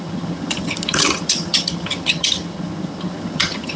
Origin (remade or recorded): remade